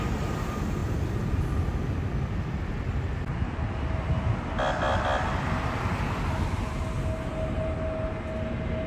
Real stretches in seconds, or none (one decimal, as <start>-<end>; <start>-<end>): 0.0-8.9